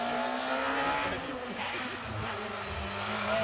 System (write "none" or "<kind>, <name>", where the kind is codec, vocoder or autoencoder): none